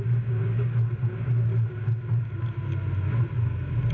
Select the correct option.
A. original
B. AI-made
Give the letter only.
A